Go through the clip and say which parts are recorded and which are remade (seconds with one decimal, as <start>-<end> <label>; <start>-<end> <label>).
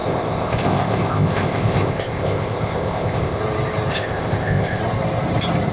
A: 0.0-3.4 remade; 3.4-3.9 recorded; 3.9-4.8 remade; 4.8-5.7 recorded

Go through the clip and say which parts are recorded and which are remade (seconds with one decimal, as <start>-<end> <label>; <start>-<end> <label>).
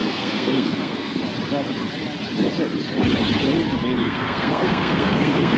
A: 0.0-1.2 remade; 1.2-4.0 recorded; 4.0-5.6 remade